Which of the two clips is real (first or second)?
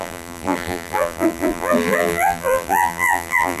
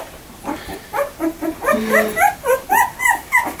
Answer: second